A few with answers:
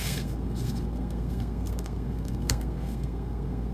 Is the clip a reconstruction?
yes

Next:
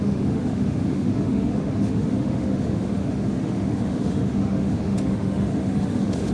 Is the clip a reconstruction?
yes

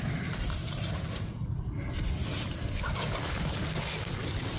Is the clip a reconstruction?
no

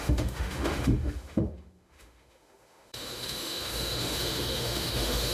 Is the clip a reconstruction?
yes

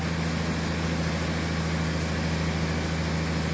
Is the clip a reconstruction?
no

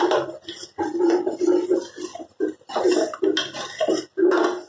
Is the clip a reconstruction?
no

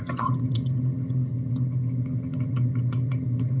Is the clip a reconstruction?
yes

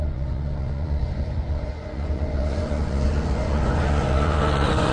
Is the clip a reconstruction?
yes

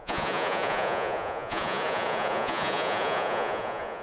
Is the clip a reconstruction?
yes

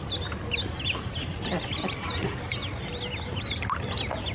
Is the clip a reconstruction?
no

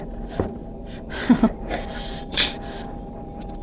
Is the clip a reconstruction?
yes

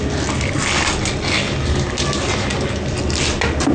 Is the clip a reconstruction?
no